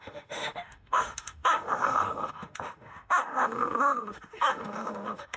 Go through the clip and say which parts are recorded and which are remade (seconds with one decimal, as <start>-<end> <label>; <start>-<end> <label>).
0.0-5.4 remade